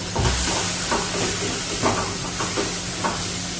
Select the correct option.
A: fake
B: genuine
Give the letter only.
B